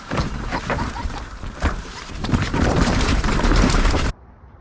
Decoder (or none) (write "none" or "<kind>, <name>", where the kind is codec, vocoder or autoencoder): vocoder, BigVGAN v2